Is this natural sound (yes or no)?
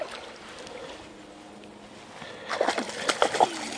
yes